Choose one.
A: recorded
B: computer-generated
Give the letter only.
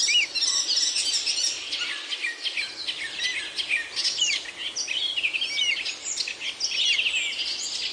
A